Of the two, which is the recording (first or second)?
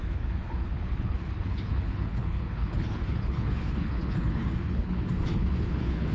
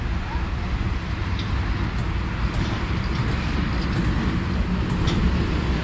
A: second